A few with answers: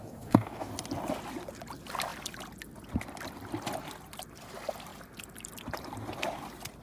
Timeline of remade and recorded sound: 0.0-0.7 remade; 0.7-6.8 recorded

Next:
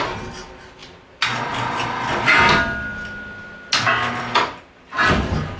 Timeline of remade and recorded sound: 0.0-5.6 recorded

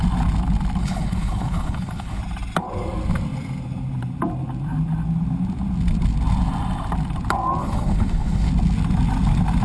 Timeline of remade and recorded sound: 0.0-0.8 recorded; 0.8-2.2 remade; 2.2-7.6 recorded; 7.6-8.5 remade; 8.5-9.6 recorded

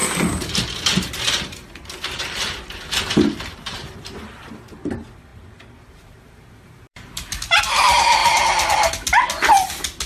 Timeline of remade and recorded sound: 0.0-1.0 recorded; 1.0-8.2 remade; 8.2-10.1 recorded

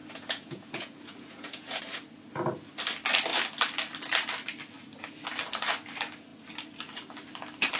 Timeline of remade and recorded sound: 0.0-1.8 remade; 1.8-7.8 recorded

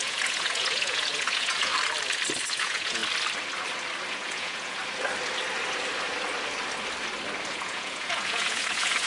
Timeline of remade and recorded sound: 0.0-1.7 remade; 1.7-2.5 recorded; 2.5-3.0 remade; 3.0-4.1 recorded; 4.1-4.8 remade; 4.8-7.5 recorded; 7.5-9.1 remade

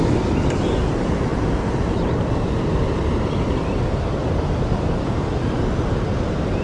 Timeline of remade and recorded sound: 0.0-6.6 recorded

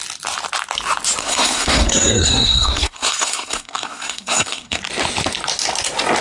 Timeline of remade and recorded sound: 0.0-1.2 recorded; 1.2-4.8 remade; 4.8-6.2 recorded